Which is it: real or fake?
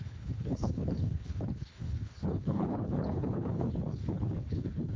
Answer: fake